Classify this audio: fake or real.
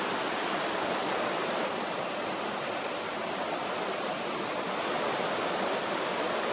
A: real